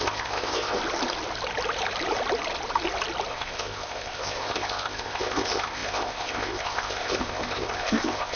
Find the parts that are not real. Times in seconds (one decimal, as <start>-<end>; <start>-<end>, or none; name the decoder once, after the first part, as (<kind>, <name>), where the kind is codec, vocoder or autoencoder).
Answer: 0.0-0.8 (codec, ZipCodec); 3.3-8.4